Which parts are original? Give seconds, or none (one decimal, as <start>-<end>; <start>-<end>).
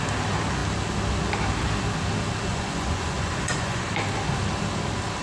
0.0-2.5; 3.9-5.2